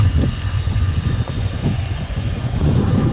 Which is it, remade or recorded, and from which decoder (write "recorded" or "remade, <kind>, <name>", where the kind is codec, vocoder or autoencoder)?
remade, vocoder, Vocos